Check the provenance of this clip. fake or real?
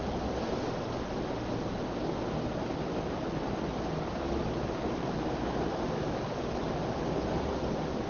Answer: real